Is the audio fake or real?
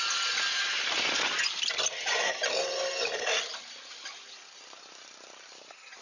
real